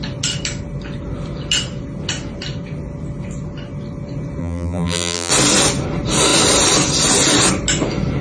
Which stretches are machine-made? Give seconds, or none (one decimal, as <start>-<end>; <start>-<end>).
4.4-5.3